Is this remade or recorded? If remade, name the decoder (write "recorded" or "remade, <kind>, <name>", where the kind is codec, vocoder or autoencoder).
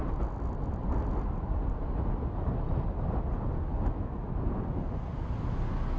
recorded